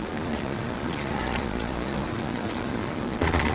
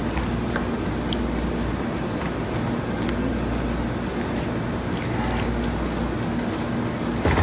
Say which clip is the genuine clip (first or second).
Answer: second